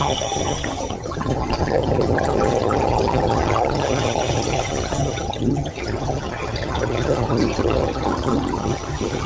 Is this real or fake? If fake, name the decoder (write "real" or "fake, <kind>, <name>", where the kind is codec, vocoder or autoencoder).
fake, vocoder, HiFi-GAN